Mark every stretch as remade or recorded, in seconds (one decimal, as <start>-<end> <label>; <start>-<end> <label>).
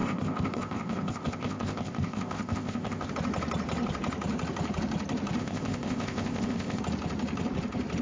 0.0-3.1 remade; 3.1-5.4 recorded; 5.4-6.8 remade; 6.8-8.0 recorded